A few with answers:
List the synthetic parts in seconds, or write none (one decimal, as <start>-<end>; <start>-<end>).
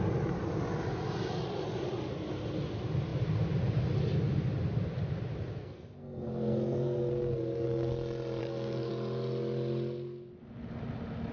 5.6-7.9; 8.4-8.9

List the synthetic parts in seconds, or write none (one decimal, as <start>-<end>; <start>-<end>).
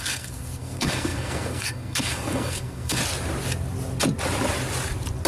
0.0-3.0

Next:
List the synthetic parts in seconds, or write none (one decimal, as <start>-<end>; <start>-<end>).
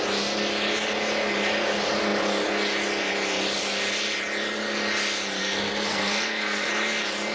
5.4-6.7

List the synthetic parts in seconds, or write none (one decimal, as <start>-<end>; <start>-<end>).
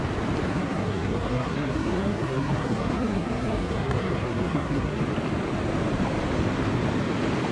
0.5-5.0